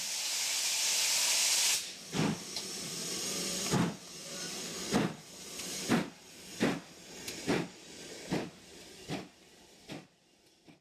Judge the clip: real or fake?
fake